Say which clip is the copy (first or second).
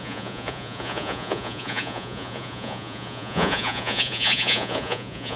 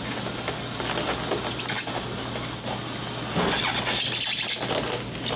first